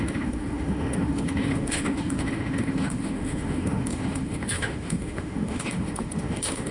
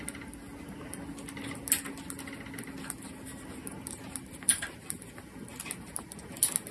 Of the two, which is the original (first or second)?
second